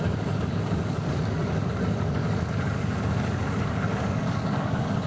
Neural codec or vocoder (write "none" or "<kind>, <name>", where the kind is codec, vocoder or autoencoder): codec, DAC